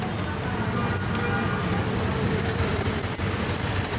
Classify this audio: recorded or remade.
recorded